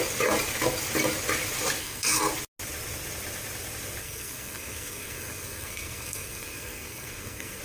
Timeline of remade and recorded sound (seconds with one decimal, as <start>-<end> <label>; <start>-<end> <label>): 0.0-1.8 recorded; 1.8-2.3 remade; 2.3-4.0 recorded; 4.0-7.6 remade